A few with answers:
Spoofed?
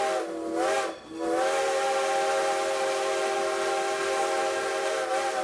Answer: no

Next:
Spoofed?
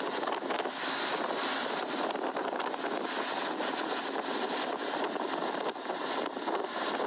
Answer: no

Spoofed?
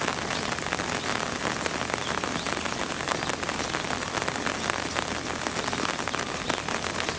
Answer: no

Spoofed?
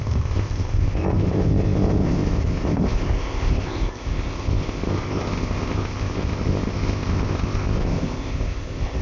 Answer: yes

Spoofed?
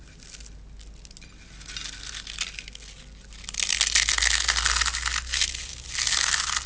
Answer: no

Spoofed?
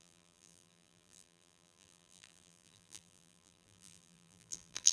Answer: yes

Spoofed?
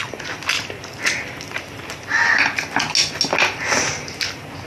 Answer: no